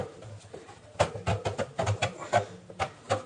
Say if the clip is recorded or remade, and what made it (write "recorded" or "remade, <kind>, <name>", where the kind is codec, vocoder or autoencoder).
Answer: recorded